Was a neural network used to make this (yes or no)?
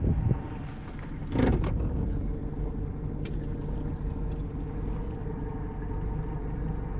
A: no